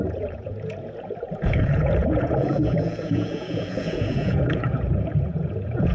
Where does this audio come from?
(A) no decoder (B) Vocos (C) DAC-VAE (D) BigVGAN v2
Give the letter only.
B